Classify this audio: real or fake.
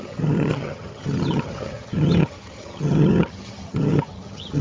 fake